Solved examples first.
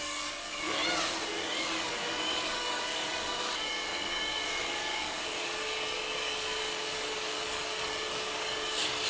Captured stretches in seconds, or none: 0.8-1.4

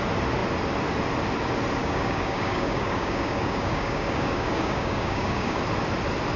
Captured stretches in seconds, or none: 0.0-1.8; 5.6-6.4

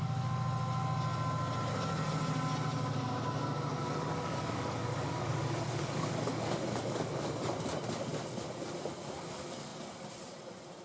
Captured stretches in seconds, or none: 0.0-3.8; 7.3-10.8

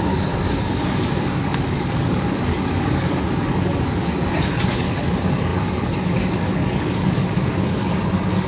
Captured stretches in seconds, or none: none

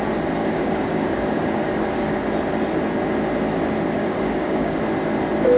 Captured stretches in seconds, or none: 0.0-0.4; 2.1-4.0; 4.8-5.6